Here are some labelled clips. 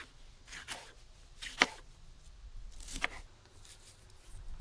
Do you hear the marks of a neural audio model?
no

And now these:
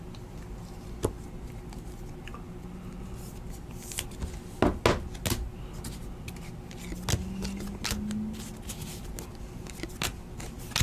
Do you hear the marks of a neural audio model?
no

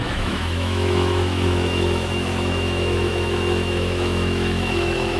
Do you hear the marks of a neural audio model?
yes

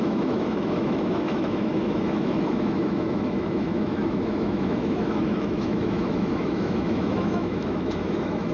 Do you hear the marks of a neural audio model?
yes